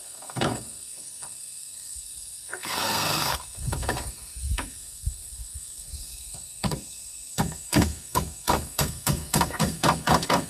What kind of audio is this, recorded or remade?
remade